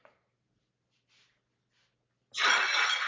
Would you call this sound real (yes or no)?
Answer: yes